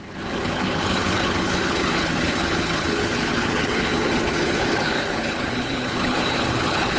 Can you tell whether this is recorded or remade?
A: remade